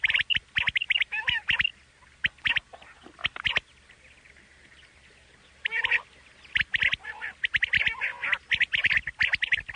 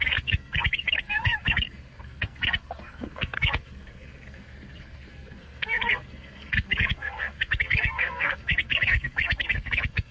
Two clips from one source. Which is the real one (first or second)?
first